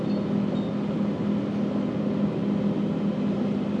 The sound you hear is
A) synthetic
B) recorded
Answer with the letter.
B